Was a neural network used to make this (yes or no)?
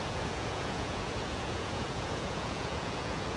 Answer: yes